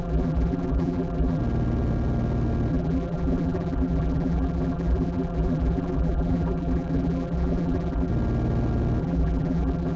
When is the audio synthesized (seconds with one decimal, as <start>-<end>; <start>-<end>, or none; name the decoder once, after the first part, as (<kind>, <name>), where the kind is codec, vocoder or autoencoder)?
0.0-1.4 (vocoder, BigVGAN v2); 2.7-8.1; 9.0-10.0